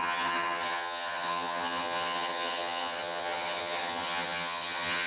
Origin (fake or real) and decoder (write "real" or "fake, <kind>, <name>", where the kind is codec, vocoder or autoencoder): fake, vocoder, HiFi-GAN